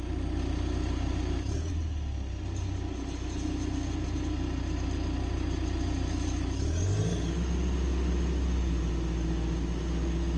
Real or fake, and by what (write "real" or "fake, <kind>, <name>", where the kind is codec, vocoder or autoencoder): real